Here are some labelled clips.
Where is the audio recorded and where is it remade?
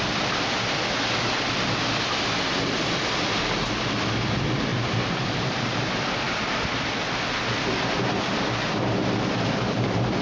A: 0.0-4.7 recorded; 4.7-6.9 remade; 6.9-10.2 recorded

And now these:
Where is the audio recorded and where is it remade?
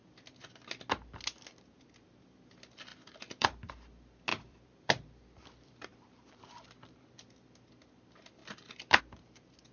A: 0.0-2.9 recorded; 2.9-3.7 remade; 3.7-4.3 recorded; 4.3-6.8 remade; 6.8-8.4 recorded; 8.4-9.0 remade; 9.0-9.7 recorded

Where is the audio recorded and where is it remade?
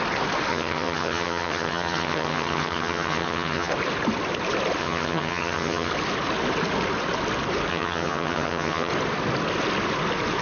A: 0.0-0.5 recorded; 0.5-3.7 remade; 3.7-4.8 recorded; 4.8-5.9 remade; 5.9-7.7 recorded; 7.7-8.9 remade; 8.9-10.4 recorded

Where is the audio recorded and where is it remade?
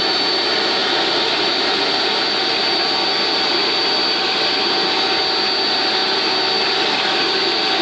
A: 0.0-7.8 recorded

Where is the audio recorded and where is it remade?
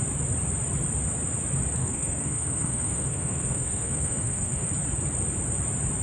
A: 0.0-1.8 recorded; 1.8-4.7 remade; 4.7-6.0 recorded